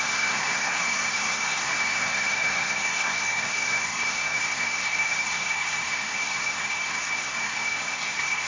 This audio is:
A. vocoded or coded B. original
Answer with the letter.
A